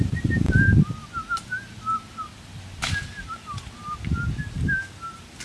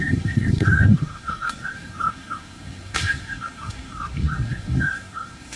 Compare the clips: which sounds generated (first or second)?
second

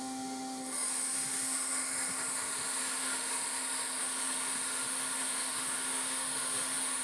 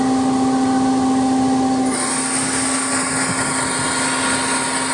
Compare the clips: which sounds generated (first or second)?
first